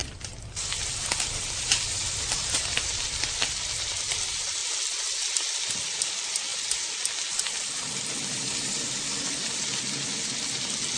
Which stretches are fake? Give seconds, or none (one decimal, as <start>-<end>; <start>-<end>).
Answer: none